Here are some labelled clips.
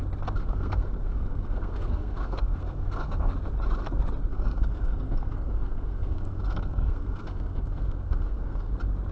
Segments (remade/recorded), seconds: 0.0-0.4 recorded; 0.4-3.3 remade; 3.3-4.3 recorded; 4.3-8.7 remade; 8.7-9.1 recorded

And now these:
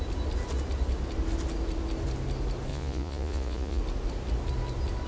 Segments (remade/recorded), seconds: 0.0-2.7 recorded; 2.7-3.8 remade; 3.8-5.1 recorded

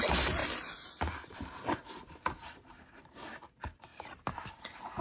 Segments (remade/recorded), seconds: 0.0-3.9 remade; 3.9-4.5 recorded; 4.5-5.0 remade

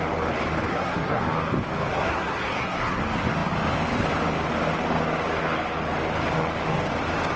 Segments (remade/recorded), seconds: 0.0-0.7 recorded; 0.7-1.2 remade; 1.2-1.9 recorded; 1.9-3.0 remade; 3.0-7.4 recorded

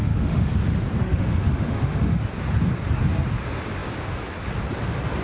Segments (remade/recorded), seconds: 0.0-0.5 remade; 0.5-1.0 recorded; 1.0-2.3 remade; 2.3-5.2 recorded

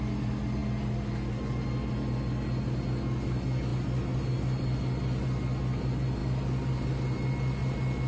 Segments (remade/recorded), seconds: 0.0-8.1 recorded

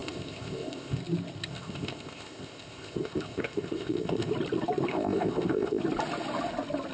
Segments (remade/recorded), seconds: 0.0-1.0 remade; 1.0-1.5 recorded; 1.5-4.3 remade; 4.3-4.9 recorded; 4.9-5.8 remade; 5.8-6.9 recorded